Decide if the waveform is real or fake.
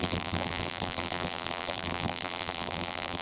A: fake